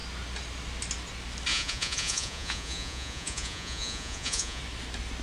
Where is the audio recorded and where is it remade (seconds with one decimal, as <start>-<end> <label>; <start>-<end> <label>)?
0.0-1.5 recorded; 1.5-4.6 remade; 4.6-5.2 recorded